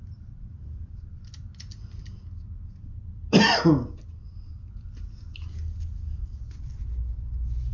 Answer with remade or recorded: recorded